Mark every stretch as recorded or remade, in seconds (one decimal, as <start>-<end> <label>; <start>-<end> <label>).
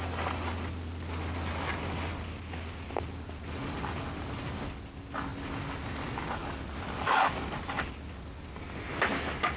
0.0-9.6 recorded